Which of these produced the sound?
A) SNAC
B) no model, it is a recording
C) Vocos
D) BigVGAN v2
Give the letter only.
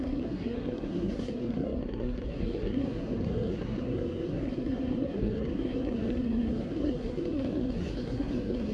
A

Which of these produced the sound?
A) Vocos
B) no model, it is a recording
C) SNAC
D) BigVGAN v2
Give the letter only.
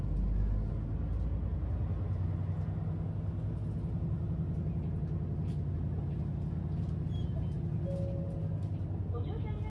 B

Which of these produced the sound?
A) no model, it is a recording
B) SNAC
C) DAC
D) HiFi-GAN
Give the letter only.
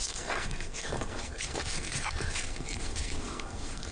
B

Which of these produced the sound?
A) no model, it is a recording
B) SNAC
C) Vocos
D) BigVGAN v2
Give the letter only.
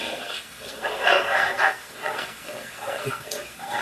B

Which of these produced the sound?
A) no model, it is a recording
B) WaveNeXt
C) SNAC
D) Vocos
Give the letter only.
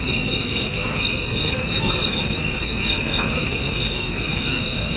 C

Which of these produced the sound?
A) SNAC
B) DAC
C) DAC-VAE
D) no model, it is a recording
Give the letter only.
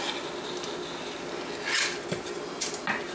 D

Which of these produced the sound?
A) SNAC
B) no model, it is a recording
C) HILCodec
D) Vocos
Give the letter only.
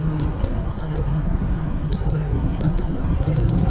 A